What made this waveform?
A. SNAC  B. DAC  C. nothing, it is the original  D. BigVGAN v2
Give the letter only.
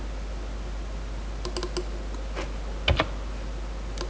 C